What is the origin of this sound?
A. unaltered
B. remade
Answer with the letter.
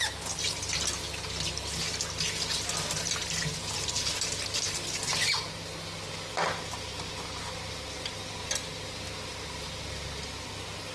A